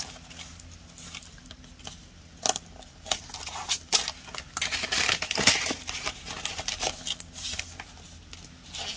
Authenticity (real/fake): real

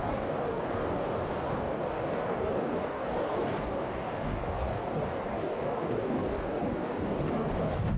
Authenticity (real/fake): fake